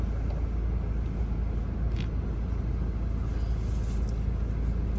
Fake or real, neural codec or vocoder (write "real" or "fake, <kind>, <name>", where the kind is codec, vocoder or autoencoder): real